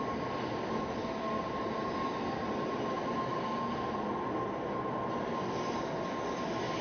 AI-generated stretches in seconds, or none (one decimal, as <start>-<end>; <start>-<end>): none